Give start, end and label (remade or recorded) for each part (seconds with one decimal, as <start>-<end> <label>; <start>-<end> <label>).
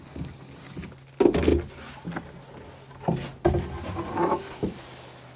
0.0-5.4 recorded